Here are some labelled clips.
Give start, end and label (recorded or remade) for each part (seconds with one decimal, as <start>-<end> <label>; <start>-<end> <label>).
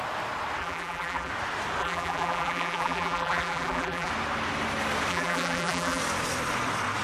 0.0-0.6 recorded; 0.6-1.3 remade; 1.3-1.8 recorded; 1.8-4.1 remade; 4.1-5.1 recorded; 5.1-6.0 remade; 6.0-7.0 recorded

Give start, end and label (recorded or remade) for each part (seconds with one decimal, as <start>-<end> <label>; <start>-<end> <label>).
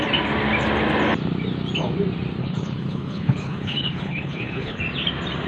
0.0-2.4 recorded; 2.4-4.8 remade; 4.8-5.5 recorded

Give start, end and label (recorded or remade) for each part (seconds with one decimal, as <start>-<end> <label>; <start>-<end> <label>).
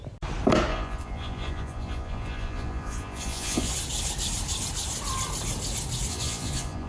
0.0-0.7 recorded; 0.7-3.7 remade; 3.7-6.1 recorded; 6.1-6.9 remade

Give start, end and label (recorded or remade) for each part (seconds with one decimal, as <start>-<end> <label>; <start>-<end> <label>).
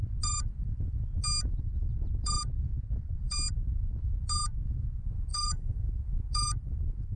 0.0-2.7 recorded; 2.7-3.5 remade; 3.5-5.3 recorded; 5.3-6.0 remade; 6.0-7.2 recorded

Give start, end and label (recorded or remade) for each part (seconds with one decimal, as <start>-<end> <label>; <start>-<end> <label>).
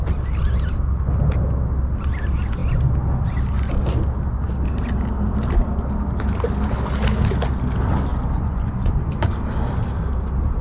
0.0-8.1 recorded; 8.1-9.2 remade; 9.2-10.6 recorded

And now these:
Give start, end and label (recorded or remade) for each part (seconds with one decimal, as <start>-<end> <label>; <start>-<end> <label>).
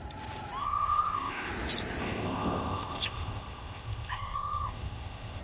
0.0-0.6 recorded; 0.6-1.5 remade; 1.5-2.0 recorded; 2.0-5.4 remade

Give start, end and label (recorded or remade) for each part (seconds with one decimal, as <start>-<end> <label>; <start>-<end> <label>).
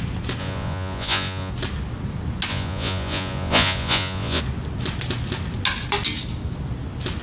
0.0-0.4 recorded; 0.4-1.5 remade; 1.5-2.5 recorded; 2.5-4.4 remade; 4.4-7.2 recorded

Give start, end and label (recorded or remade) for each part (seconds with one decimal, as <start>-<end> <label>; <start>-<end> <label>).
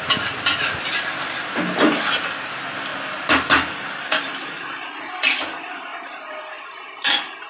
0.0-7.5 recorded